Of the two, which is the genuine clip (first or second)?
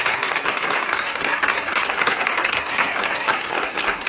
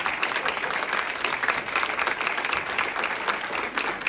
second